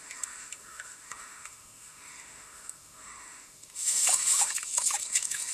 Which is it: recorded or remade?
remade